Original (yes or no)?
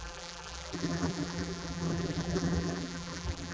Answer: no